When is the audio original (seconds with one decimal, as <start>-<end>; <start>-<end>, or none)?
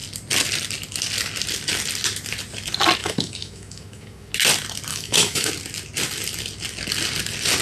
0.0-3.0; 4.3-4.9; 5.5-7.6